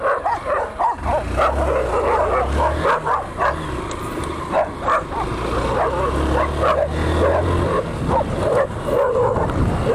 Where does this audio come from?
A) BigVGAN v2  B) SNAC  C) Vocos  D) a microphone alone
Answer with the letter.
D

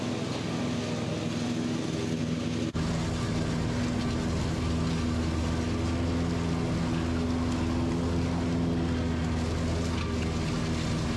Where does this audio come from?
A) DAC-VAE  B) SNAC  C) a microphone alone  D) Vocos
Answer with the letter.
C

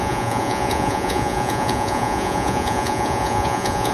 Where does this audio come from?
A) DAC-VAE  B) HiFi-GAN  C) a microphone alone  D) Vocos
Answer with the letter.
D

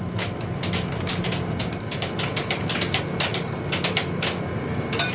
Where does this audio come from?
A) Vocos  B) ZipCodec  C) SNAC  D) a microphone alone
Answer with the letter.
D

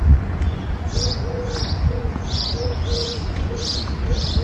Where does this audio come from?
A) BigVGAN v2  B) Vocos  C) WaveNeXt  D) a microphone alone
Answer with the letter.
B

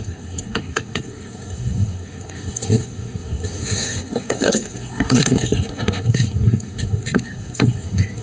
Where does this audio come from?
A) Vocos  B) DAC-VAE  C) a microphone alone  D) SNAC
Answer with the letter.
D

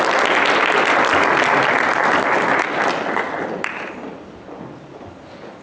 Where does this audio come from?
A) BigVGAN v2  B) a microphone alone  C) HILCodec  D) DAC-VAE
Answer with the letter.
B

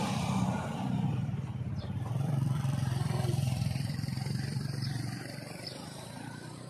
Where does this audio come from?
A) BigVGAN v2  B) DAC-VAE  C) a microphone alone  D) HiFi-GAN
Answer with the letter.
A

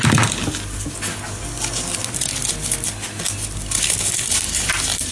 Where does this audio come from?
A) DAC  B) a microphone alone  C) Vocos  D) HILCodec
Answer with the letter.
B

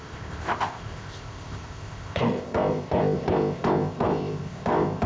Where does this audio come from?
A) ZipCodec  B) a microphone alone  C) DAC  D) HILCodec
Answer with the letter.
A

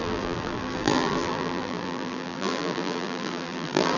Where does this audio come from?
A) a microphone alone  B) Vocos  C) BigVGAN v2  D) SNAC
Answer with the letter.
C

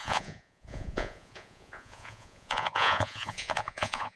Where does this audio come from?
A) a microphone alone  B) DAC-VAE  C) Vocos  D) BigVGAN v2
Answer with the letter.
C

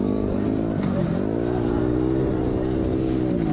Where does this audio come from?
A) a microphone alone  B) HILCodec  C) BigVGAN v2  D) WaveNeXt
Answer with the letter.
A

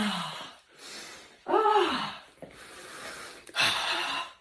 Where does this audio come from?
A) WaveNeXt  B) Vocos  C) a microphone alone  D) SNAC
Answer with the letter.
C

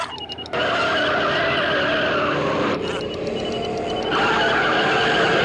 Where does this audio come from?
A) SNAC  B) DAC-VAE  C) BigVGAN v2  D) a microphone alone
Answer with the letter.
D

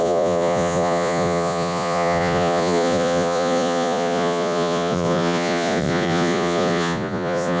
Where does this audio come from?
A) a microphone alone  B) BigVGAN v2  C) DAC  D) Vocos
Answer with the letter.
D